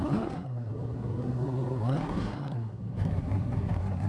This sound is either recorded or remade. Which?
remade